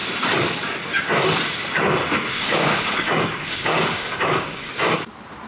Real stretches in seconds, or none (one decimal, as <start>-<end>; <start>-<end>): 0.0-2.3; 4.7-5.5

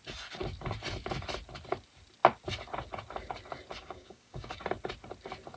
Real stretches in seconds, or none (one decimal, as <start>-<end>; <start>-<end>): 0.0-3.8; 4.6-5.6

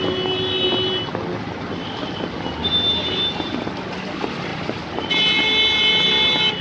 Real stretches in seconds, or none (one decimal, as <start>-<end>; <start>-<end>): 0.0-6.6

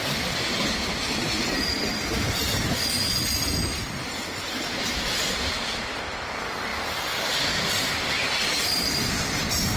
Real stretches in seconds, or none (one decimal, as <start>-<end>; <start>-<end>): 0.0-9.8

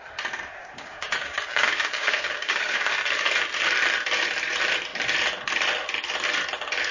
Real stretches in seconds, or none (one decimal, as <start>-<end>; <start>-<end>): 0.0-0.5; 2.9-6.9

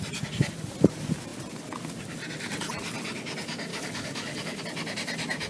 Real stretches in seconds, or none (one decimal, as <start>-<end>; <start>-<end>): 0.0-3.7; 4.6-5.5